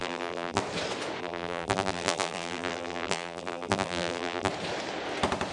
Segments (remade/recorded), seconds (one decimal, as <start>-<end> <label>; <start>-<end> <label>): 0.0-0.6 remade; 0.6-1.2 recorded; 1.2-4.5 remade; 4.5-5.5 recorded